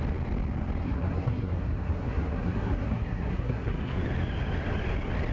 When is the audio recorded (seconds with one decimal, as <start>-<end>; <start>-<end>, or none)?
0.0-0.8; 4.0-5.3